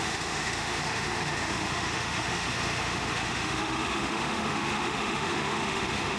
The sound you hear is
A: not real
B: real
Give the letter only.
A